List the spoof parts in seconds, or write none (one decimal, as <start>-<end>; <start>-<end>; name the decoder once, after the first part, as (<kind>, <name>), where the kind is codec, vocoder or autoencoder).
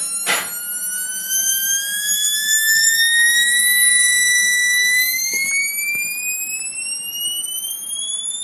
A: 1.2-5.5 (codec, DAC)